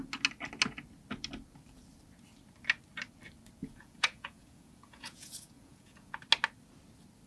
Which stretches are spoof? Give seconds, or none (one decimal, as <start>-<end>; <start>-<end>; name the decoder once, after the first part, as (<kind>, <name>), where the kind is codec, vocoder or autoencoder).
3.6-6.1 (vocoder, Vocos)